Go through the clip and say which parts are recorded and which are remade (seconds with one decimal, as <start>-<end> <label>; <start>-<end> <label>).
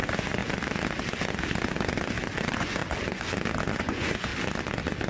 0.0-0.4 remade; 0.4-2.4 recorded; 2.4-2.8 remade; 2.8-3.7 recorded; 3.7-4.3 remade; 4.3-5.1 recorded